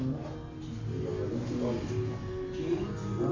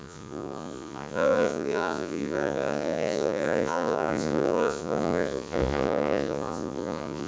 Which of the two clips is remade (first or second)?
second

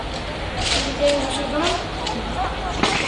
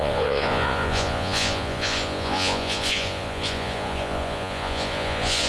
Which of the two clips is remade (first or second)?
second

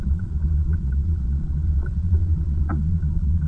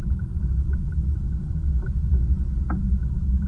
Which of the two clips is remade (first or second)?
first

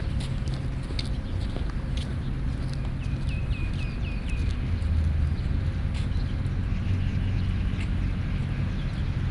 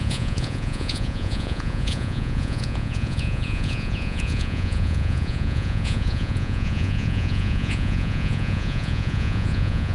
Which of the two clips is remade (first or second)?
second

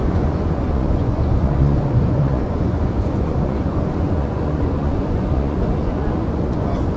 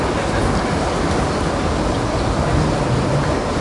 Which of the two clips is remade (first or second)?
first